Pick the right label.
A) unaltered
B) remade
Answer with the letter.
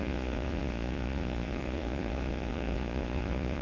B